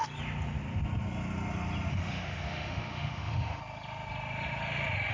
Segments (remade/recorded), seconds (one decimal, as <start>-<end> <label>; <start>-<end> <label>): 0.0-1.9 recorded; 1.9-3.6 remade; 3.6-5.1 recorded